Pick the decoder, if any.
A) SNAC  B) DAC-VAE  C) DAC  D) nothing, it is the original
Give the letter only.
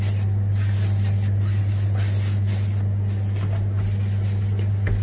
D